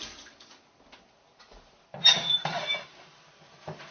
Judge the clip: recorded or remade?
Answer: recorded